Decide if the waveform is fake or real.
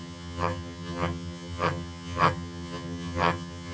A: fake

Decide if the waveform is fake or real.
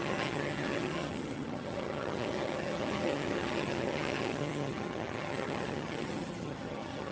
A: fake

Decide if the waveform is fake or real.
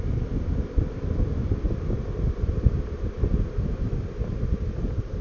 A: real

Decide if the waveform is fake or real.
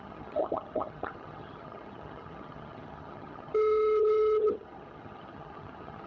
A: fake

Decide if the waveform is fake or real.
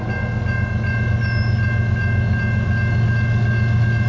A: real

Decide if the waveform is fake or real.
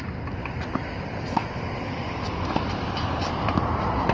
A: real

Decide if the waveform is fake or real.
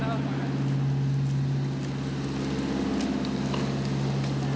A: real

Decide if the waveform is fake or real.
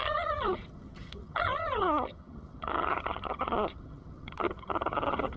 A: fake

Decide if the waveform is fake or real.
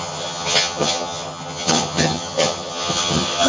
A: fake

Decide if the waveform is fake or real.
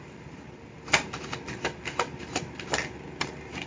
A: real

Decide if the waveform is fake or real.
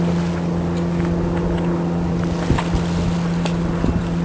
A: real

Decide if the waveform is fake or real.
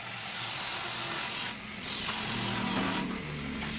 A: real